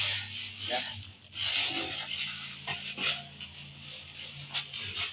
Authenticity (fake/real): real